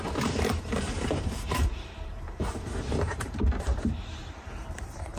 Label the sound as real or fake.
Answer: fake